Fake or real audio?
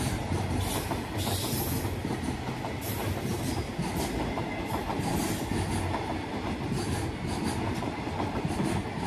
real